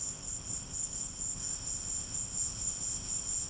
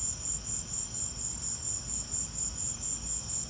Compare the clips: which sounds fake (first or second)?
first